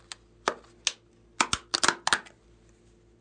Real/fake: real